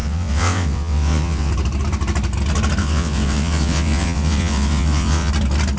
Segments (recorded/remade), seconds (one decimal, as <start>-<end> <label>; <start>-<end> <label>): 0.0-1.5 remade; 1.5-2.8 recorded; 2.8-5.3 remade; 5.3-5.8 recorded